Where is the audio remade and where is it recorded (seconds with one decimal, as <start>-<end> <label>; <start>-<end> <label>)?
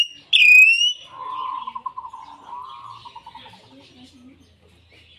0.0-5.2 recorded